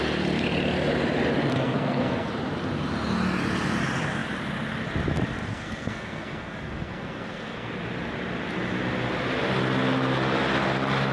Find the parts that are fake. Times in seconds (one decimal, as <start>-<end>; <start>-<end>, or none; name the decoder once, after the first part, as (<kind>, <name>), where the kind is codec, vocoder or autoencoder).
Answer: 1.5-2.3 (codec, SNAC); 5.5-7.7